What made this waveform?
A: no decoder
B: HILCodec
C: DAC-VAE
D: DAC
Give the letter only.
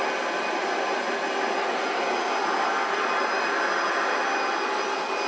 A